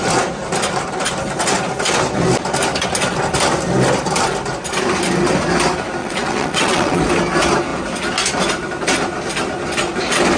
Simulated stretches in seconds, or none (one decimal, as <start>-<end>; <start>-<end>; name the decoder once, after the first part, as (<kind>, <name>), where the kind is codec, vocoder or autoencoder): 6.0-7.0 (vocoder, WaveNeXt)